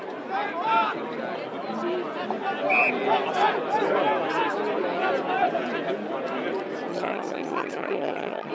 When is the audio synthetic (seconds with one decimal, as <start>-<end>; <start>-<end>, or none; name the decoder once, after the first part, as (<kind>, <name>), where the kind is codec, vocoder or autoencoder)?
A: 6.9-8.5 (vocoder, HiFi-GAN)